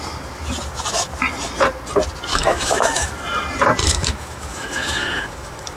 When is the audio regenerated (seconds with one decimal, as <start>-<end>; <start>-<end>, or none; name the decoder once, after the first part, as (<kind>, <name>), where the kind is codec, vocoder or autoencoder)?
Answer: 2.3-3.1 (autoencoder, DAC-VAE); 3.8-5.8